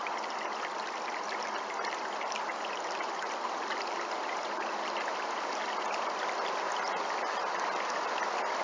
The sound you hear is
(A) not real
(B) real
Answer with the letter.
B